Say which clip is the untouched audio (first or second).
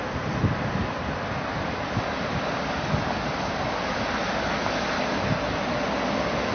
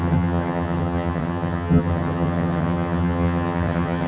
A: first